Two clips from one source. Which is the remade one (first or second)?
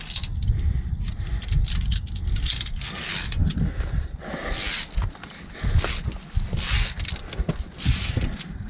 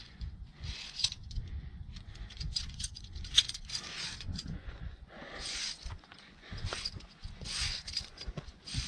second